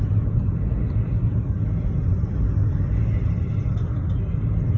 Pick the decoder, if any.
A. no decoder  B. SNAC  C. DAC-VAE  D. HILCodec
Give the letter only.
A